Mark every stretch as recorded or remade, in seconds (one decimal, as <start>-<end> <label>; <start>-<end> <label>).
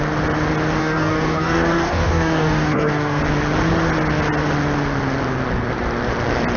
0.0-0.8 recorded; 0.8-3.2 remade; 3.2-6.6 recorded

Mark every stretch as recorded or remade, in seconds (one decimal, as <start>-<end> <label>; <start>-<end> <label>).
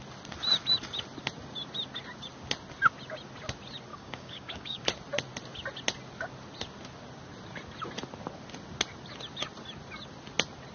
0.0-3.9 recorded; 3.9-4.8 remade; 4.8-10.7 recorded